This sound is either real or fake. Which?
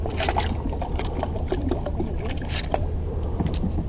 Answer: fake